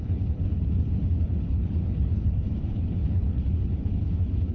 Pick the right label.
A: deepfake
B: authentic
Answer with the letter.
A